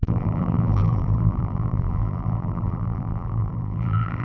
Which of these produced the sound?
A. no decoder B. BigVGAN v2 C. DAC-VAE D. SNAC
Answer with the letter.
B